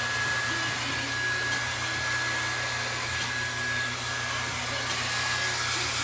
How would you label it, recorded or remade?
recorded